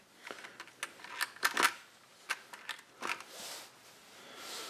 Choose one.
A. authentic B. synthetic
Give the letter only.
A